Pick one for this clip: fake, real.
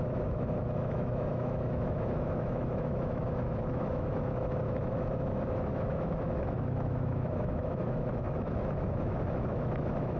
fake